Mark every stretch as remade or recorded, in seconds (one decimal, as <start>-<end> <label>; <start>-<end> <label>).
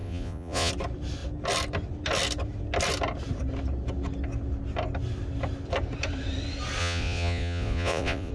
0.0-0.7 remade; 0.7-6.8 recorded; 6.8-8.3 remade